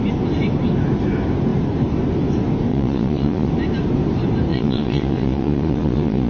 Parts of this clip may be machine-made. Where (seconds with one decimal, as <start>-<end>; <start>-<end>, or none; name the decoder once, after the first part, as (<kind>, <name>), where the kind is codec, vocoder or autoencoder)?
2.7-3.5 (vocoder, Vocos); 4.5-6.3

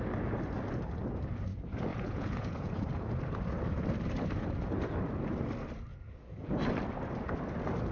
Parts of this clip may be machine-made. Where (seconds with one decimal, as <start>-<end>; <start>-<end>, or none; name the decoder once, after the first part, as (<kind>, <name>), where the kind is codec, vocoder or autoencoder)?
1.9-3.2 (vocoder, Vocos); 5.9-6.6

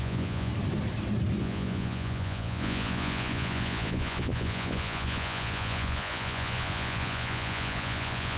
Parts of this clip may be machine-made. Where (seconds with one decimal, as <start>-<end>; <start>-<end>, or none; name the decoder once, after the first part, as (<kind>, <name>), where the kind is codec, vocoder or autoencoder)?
0.0-0.5 (vocoder, Vocos); 1.4-8.4

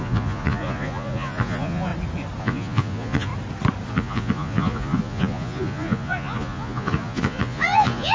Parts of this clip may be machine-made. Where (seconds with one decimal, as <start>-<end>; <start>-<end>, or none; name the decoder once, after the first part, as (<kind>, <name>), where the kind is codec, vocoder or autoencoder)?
0.0-1.9 (vocoder, Vocos); 2.4-3.3; 3.9-8.1

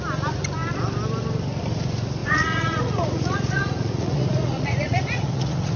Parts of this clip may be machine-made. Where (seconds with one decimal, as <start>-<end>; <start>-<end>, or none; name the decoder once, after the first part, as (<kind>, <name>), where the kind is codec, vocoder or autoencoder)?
2.2-5.8 (vocoder, Vocos)